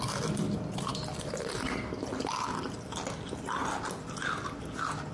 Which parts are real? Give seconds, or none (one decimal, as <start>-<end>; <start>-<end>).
0.0-5.1

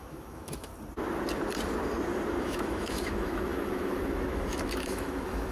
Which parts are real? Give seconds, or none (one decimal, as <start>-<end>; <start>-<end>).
0.7-2.4

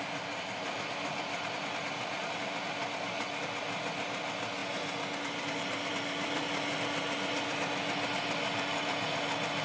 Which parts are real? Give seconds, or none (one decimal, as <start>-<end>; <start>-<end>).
0.0-9.6

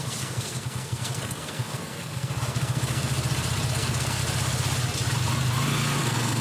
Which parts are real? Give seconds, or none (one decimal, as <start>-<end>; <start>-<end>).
3.1-3.7; 4.2-6.0